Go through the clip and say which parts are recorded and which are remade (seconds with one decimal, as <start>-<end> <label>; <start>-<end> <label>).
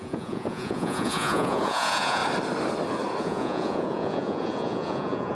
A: 0.0-2.2 remade; 2.2-3.2 recorded; 3.2-5.3 remade